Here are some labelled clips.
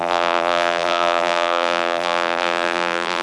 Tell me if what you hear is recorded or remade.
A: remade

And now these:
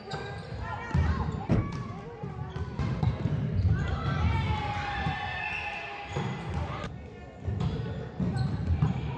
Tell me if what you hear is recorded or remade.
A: recorded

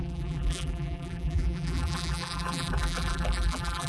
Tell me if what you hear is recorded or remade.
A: remade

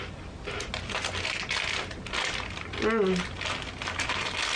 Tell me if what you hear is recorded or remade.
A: recorded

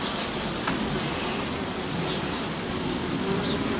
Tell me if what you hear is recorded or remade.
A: recorded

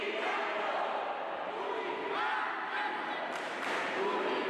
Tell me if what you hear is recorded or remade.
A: recorded